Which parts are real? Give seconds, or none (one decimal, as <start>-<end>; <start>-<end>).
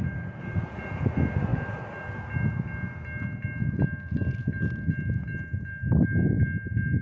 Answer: 0.0-7.0